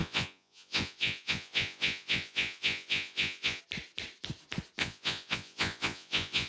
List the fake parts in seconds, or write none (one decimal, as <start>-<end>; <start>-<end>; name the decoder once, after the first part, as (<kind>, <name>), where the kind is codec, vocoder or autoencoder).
0.0-3.6 (vocoder, Vocos); 4.8-6.5